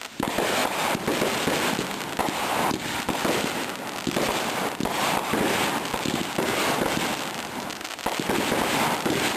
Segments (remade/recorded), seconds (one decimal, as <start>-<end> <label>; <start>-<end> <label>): 0.0-9.4 recorded

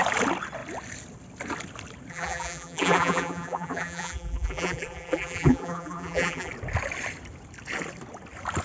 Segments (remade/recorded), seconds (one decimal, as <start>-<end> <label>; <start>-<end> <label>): 0.0-2.1 recorded; 2.1-6.5 remade; 6.5-8.6 recorded

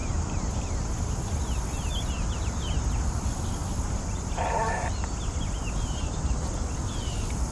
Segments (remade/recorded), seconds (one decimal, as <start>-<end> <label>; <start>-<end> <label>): 0.0-7.5 recorded

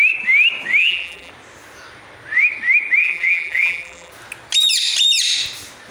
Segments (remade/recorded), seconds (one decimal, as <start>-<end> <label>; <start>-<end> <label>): 0.0-0.8 recorded; 0.8-1.3 remade; 1.3-3.0 recorded; 3.0-4.1 remade; 4.1-5.9 recorded